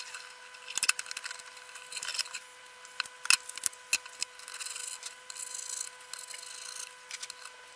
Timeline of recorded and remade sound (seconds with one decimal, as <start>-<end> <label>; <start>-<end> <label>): 0.0-2.1 recorded; 2.1-2.6 remade; 2.6-4.2 recorded; 4.2-5.4 remade; 5.4-7.8 recorded